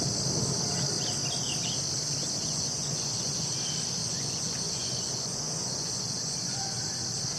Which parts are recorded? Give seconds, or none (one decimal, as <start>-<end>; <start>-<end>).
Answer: 0.0-2.4; 3.5-4.0; 6.8-7.4